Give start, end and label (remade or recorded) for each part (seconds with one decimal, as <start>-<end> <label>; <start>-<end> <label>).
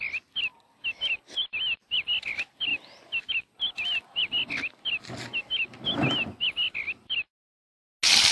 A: 0.0-8.3 recorded